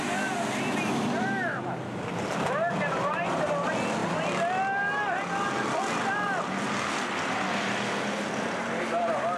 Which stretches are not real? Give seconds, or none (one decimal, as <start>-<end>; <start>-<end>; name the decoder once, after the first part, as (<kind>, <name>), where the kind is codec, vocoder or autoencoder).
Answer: none